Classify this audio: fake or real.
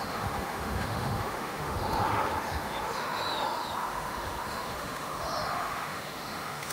fake